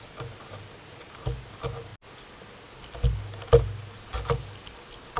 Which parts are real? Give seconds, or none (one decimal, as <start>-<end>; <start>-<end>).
0.0-5.2